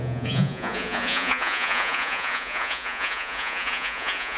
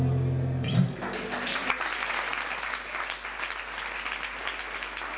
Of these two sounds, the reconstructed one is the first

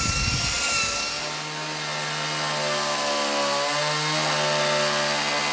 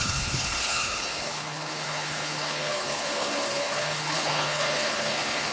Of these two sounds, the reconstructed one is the second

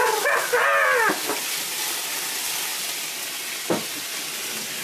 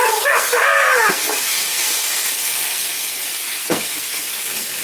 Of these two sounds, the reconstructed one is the second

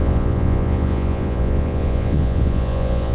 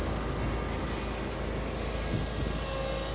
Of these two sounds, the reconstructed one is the first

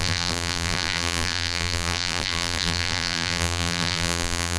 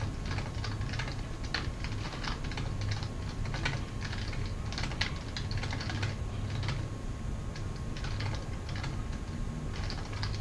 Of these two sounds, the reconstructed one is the first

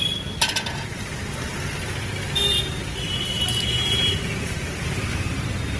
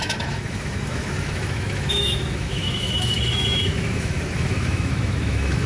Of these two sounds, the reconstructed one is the second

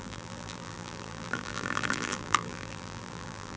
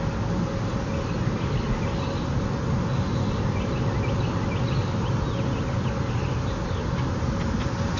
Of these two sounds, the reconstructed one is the first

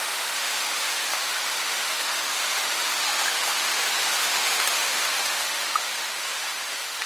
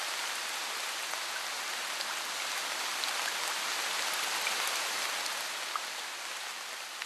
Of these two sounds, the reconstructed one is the first